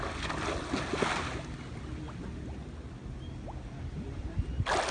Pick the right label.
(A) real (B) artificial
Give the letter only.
A